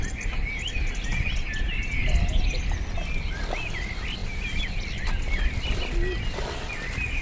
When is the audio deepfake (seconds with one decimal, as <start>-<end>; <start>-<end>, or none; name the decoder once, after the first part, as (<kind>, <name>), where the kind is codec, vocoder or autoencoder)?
none